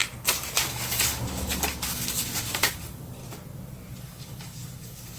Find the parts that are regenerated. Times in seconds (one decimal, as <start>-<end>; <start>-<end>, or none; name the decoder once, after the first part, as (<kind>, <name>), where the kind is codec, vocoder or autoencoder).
0.6-3.2 (codec, DAC); 4.0-5.2